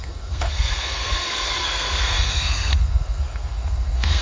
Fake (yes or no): yes